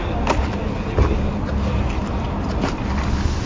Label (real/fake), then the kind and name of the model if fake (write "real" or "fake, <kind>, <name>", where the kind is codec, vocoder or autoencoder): real